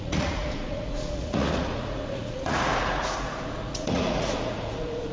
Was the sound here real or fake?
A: fake